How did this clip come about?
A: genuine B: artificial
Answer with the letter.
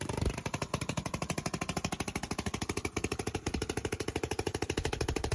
B